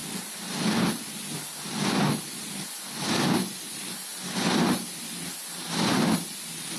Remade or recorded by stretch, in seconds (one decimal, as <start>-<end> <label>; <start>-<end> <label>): 0.0-6.8 recorded